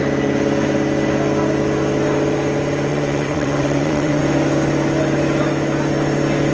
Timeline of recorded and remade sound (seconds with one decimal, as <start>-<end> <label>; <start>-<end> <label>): 0.0-2.9 recorded; 2.9-4.2 remade; 4.2-6.5 recorded